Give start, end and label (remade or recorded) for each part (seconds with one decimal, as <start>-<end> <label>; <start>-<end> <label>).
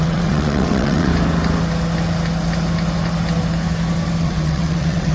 0.0-1.1 remade; 1.1-4.2 recorded; 4.2-5.1 remade